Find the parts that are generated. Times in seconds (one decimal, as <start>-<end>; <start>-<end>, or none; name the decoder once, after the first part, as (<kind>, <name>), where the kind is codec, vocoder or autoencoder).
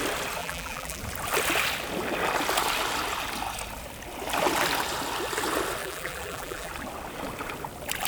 0.4-1.0 (vocoder, BigVGAN v2); 5.8-6.7